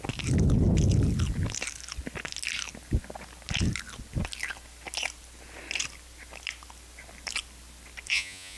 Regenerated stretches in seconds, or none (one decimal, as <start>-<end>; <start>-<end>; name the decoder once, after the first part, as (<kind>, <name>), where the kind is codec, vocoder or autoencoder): 8.1-8.6 (vocoder, Vocos)

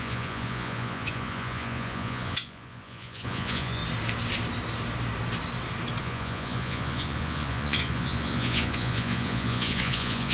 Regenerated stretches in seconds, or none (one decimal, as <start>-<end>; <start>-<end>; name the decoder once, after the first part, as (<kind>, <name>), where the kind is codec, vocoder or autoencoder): 0.0-3.8 (vocoder, Vocos); 6.0-10.3

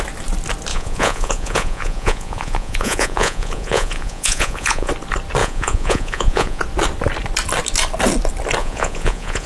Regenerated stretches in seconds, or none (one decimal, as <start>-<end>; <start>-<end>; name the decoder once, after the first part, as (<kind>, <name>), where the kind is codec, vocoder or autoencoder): 0.7-4.9 (vocoder, Vocos); 5.4-6.6; 8.6-9.5

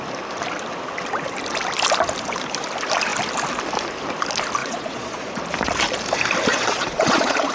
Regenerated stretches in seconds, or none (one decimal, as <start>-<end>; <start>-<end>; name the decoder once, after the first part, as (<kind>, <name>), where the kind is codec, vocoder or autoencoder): 4.6-5.4 (vocoder, Vocos); 6.5-7.5

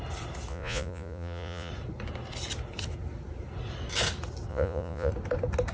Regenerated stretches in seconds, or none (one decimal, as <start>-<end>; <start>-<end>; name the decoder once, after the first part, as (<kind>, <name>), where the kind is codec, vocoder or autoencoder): 0.5-1.7 (vocoder, Vocos); 4.5-5.1

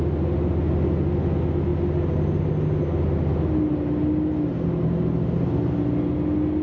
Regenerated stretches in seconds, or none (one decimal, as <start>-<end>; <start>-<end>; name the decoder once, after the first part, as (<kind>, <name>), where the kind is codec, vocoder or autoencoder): none

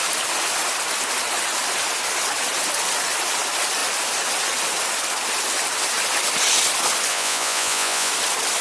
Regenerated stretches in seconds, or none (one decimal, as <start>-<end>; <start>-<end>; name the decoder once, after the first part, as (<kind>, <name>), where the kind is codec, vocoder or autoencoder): 7.1-8.1 (vocoder, Vocos)